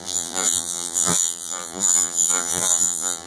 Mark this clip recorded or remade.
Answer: remade